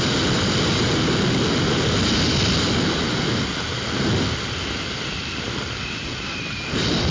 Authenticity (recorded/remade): recorded